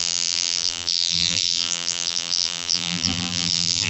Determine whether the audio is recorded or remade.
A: remade